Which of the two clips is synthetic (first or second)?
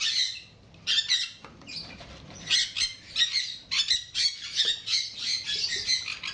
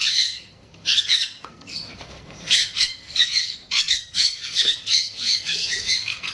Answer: second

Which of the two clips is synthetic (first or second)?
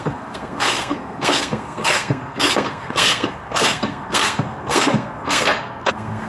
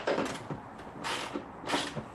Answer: first